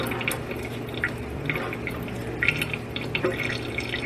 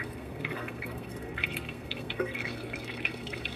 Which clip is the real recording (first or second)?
first